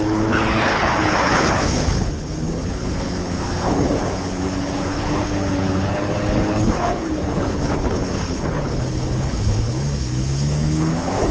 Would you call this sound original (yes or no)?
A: no